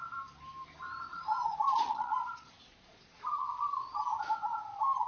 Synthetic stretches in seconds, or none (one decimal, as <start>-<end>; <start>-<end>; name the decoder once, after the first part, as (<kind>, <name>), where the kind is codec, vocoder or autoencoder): 1.1-4.0 (vocoder, Vocos)